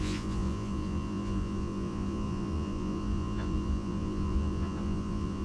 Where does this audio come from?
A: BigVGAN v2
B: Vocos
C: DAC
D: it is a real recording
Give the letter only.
B